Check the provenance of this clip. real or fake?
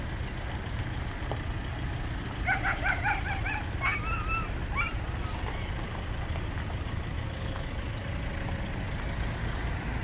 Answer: real